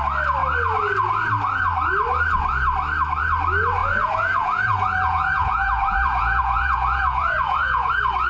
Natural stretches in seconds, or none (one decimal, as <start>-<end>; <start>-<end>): 0.0-3.8; 7.9-8.3